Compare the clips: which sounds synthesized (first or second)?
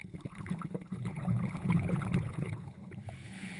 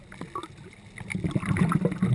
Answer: first